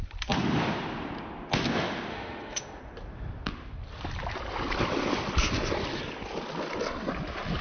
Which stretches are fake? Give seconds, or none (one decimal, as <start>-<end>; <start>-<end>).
2.1-2.8